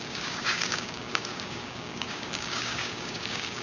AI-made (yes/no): yes